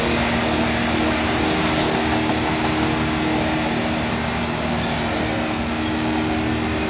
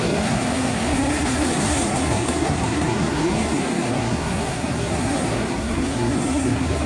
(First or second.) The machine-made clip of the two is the second